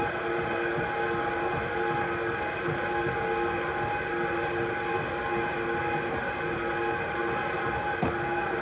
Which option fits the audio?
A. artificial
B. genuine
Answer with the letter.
B